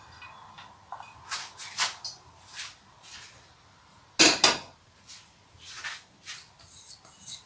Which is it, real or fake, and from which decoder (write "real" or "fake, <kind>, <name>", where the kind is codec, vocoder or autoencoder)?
real